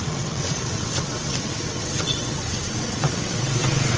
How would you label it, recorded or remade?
remade